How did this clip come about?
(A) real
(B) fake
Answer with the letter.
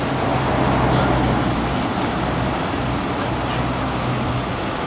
A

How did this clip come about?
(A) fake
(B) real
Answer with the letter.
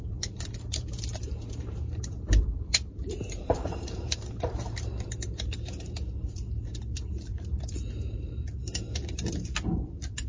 A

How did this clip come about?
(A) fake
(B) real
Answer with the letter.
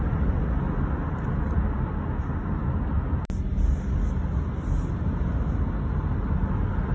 B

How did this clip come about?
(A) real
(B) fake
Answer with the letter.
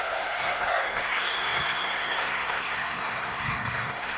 B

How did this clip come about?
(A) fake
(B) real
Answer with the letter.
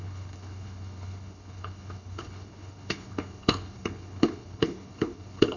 A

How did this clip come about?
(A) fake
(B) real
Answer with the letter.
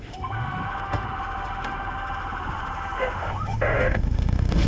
A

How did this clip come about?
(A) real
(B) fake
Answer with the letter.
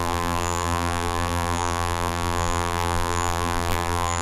B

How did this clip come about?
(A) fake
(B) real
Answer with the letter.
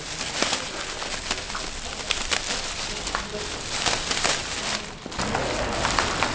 B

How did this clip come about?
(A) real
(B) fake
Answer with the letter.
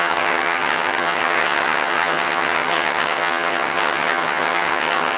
B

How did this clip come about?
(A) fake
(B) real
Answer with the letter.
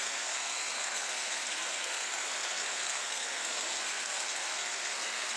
A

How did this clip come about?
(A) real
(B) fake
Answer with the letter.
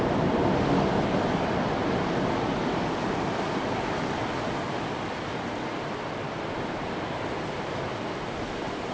A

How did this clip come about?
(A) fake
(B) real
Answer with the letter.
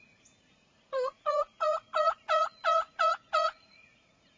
A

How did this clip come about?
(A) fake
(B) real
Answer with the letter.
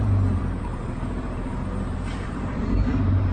A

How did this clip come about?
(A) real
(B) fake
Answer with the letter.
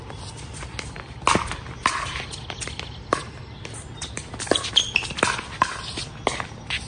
A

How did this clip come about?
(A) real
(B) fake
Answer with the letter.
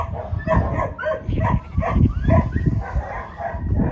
A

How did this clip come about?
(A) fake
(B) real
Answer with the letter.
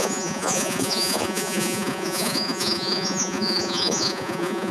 A